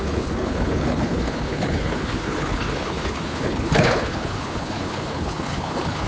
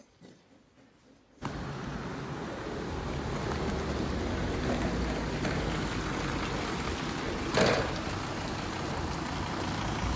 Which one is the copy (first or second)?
first